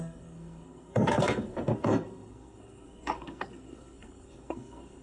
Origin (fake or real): fake